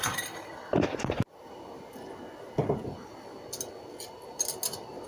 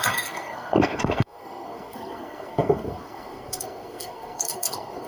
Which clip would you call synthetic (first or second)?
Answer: second